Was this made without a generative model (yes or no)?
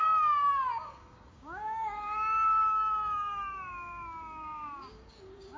no